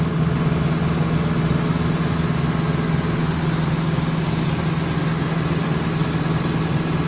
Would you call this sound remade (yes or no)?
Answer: no